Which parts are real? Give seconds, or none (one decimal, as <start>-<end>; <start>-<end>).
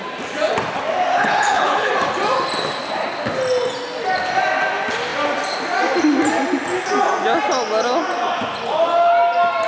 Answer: 0.0-1.1; 1.9-9.7